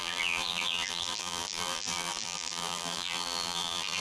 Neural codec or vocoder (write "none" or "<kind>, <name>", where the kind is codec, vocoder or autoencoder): vocoder, BigVGAN v2